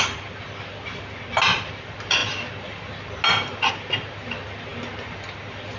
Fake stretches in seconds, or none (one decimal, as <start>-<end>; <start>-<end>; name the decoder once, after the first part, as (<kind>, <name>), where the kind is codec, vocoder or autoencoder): none